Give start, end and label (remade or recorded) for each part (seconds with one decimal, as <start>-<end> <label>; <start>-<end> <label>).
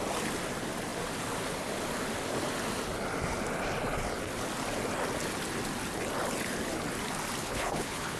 0.0-7.4 recorded; 7.4-8.2 remade